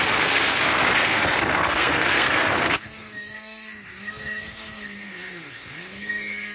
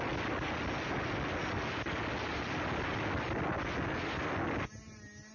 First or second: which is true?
second